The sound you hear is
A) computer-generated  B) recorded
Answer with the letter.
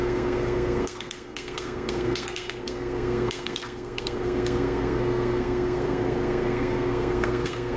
A